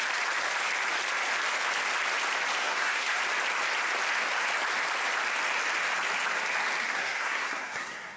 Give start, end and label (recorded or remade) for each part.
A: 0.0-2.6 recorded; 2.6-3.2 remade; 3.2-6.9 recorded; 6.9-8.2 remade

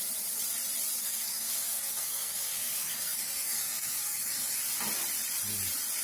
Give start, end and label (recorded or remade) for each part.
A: 0.0-1.0 recorded; 1.0-4.6 remade; 4.6-6.0 recorded

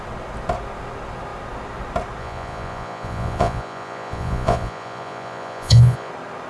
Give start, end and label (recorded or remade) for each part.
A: 0.0-2.2 recorded; 2.2-6.1 remade; 6.1-6.5 recorded